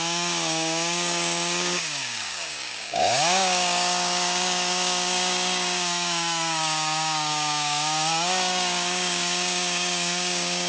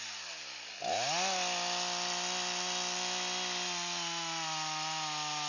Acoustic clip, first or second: second